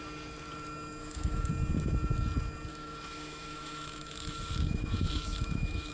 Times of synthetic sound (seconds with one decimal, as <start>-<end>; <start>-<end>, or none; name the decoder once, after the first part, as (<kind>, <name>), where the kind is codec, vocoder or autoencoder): 1.0-1.5 (autoencoder, DAC-VAE); 2.7-5.9